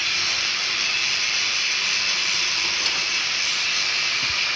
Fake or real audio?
real